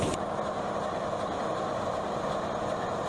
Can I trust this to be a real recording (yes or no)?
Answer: yes